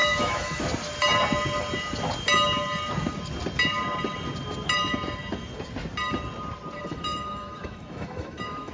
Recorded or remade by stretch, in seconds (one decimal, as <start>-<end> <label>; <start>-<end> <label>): 0.0-0.6 remade; 0.6-6.8 recorded; 6.8-8.7 remade